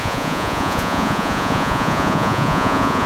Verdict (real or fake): fake